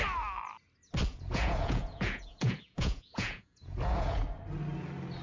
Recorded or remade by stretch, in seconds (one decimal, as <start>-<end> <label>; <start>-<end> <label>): 0.0-1.1 recorded; 1.1-4.2 remade; 4.2-5.2 recorded